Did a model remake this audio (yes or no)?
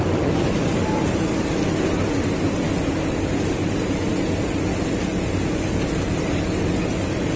no